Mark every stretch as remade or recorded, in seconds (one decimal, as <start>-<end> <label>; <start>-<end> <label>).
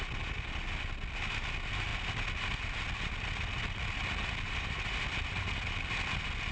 0.0-6.5 recorded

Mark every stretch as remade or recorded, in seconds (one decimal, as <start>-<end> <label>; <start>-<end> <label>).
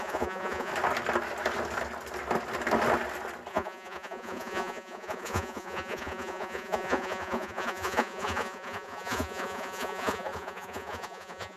0.0-0.7 remade; 0.7-3.5 recorded; 3.5-11.6 remade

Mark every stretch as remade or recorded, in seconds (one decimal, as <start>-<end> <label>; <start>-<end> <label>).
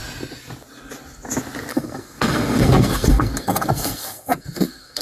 0.0-1.7 recorded; 1.7-5.0 remade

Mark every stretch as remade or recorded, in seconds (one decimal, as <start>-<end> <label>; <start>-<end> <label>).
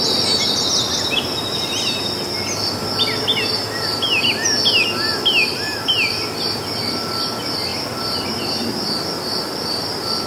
0.0-10.3 recorded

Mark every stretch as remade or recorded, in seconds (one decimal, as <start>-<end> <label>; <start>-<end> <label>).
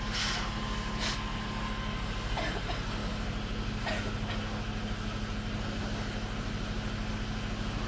0.0-7.9 recorded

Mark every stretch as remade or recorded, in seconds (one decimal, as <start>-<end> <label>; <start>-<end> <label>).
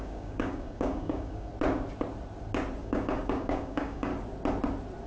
0.0-1.5 remade; 1.5-2.8 recorded; 2.8-4.1 remade; 4.1-5.1 recorded